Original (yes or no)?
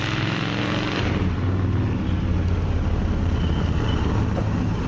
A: yes